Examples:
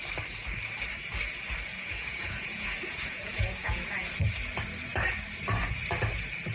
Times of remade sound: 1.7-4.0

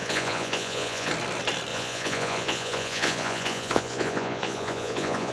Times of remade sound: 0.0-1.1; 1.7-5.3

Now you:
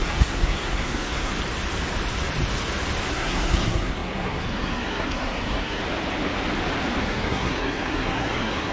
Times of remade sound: 0.0-1.3; 3.1-5.8; 7.0-8.7

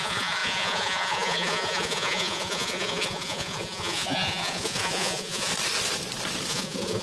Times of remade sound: 0.0-5.5; 6.5-7.0

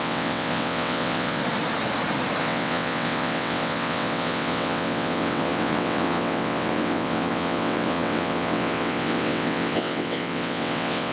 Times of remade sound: 0.0-1.4; 2.4-11.1

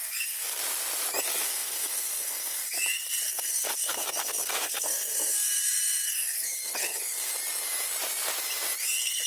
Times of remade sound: 0.0-0.6; 1.2-7.3; 8.8-9.3

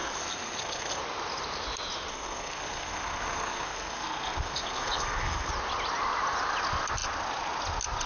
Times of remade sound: 0.0-1.0; 2.1-5.5